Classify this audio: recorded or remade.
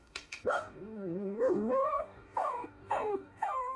remade